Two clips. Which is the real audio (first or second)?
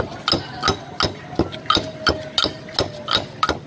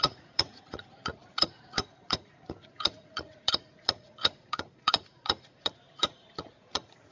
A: first